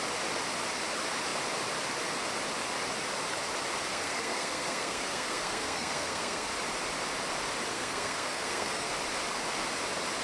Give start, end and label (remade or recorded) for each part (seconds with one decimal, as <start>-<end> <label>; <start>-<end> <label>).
0.0-3.9 recorded; 3.9-6.5 remade; 6.5-7.7 recorded; 7.7-8.9 remade; 8.9-10.2 recorded